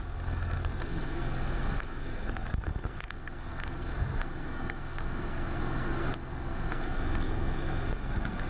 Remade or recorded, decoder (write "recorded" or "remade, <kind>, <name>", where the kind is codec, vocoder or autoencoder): remade, codec, SNAC